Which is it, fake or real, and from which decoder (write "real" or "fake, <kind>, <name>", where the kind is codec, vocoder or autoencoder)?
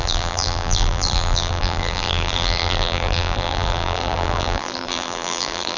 fake, vocoder, BigVGAN v2